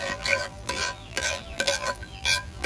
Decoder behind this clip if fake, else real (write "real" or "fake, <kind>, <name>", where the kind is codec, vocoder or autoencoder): fake, vocoder, BigVGAN v2